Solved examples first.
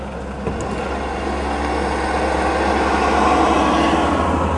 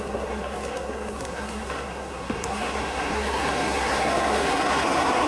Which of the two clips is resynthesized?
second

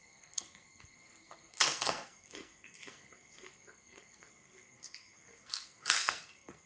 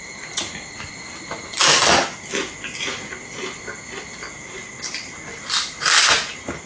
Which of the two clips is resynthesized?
first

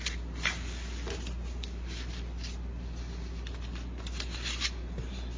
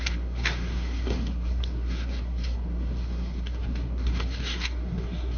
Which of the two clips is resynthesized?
second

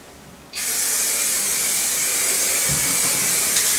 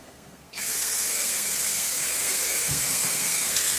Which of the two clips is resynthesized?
second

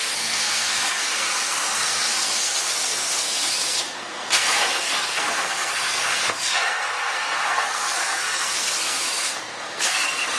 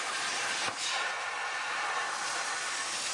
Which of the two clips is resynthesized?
first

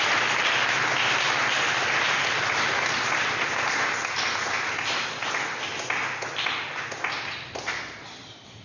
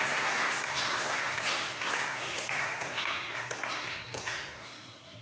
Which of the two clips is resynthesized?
second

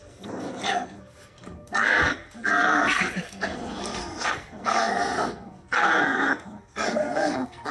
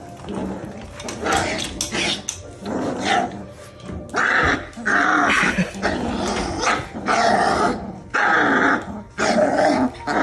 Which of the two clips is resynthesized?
first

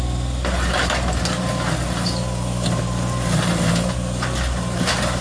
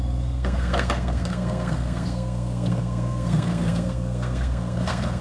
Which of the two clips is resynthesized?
second